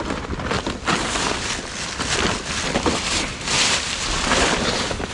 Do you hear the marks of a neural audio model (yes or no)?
yes